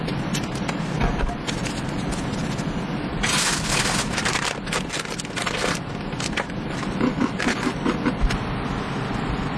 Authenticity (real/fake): real